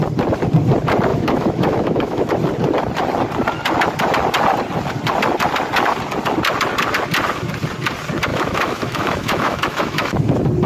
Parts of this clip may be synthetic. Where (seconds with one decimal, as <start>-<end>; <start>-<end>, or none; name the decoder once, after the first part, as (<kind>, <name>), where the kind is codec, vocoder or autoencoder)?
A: 1.1-2.3 (autoencoder, DAC-VAE); 8.3-10.2